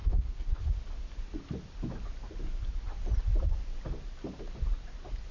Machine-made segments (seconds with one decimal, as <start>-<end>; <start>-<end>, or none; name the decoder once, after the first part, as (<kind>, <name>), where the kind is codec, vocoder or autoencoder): 0.0-0.6 (codec, HILCodec)